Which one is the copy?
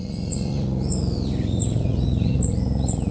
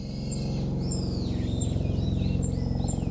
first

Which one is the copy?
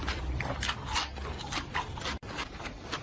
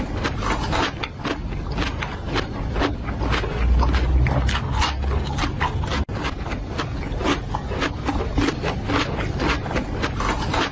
first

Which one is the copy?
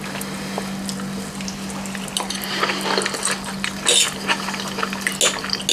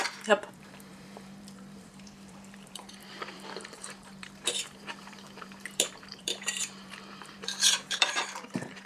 second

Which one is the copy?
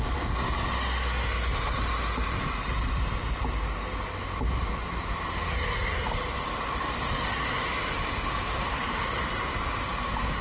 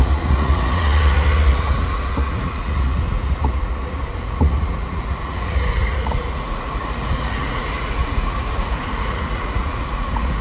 second